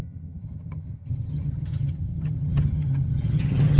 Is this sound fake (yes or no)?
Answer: yes